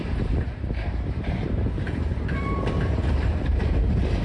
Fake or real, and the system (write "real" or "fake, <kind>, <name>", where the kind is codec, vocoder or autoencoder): fake, vocoder, BigVGAN v2